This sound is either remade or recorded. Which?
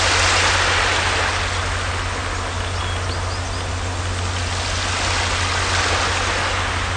recorded